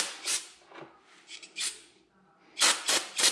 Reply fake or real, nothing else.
real